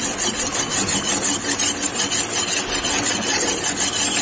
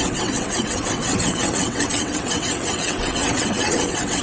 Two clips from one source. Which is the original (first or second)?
first